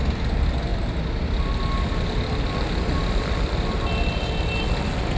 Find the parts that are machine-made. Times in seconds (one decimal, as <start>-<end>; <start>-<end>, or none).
none